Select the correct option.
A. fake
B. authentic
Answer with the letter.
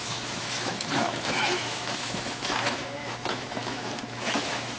A